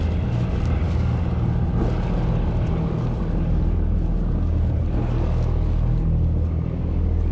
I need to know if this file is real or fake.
real